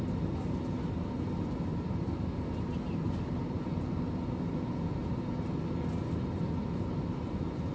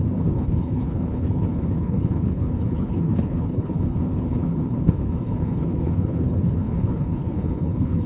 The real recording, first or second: first